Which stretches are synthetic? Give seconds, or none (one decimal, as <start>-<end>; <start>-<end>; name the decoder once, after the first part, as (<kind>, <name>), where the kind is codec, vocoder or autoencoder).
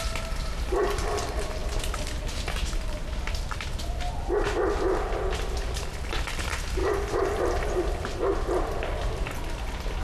none